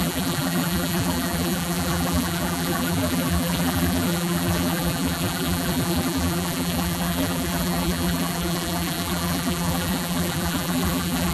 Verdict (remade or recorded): remade